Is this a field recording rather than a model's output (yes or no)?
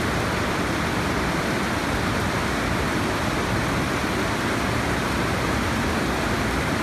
yes